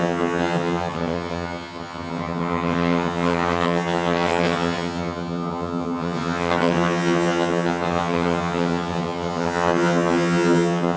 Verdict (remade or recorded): remade